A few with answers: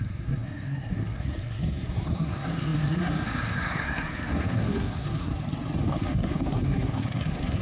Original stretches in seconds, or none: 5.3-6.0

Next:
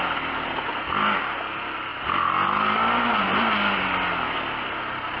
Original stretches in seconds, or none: 0.0-5.2

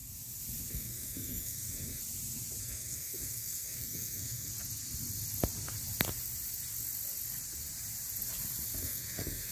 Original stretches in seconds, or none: 0.0-0.7; 2.0-2.6; 4.5-8.8